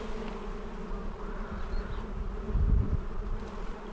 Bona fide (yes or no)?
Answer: yes